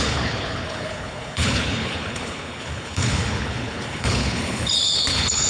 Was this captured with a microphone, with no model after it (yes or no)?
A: no